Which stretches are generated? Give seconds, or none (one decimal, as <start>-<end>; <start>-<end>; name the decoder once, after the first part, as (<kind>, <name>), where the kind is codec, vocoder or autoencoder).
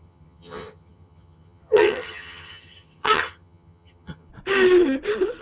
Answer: 0.0-4.3 (vocoder, HiFi-GAN)